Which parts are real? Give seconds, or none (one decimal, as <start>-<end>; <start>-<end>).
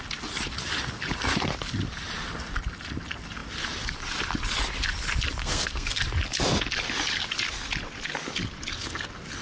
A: 0.0-5.4; 6.0-9.4